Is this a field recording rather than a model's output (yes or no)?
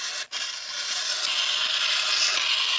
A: yes